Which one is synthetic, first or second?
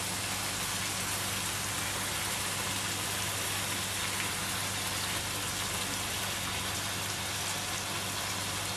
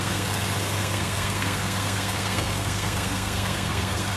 second